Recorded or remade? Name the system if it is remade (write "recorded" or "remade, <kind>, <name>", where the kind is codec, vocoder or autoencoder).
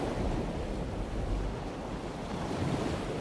recorded